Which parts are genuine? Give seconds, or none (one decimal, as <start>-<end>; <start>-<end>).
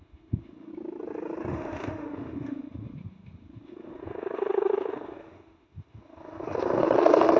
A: 0.7-1.5